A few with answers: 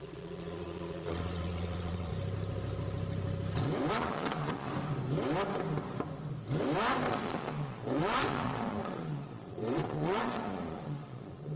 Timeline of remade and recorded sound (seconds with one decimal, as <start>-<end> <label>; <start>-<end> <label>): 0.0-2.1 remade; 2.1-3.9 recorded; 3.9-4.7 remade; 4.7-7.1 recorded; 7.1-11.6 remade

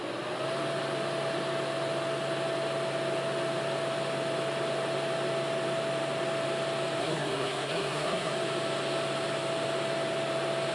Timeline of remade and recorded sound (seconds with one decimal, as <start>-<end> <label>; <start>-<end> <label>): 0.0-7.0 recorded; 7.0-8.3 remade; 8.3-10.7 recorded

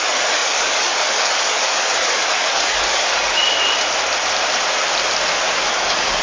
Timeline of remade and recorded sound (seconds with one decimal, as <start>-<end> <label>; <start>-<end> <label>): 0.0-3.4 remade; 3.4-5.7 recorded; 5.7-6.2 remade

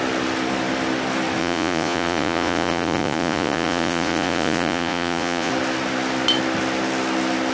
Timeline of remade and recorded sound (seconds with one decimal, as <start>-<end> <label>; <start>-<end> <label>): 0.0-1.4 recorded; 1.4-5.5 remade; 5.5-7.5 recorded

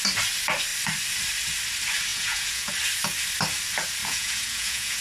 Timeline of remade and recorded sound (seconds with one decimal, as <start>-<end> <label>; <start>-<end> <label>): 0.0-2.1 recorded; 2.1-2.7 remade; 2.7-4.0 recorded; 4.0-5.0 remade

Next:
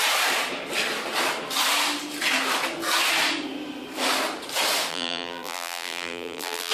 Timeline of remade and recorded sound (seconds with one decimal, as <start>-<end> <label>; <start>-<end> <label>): 0.0-4.9 recorded; 4.9-6.7 remade